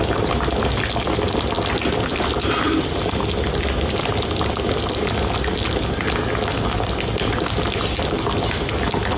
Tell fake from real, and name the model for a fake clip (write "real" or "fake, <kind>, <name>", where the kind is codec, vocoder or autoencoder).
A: real